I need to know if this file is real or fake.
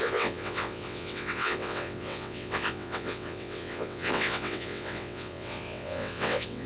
fake